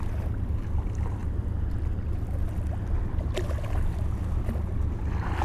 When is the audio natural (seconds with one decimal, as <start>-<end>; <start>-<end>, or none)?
0.0-5.4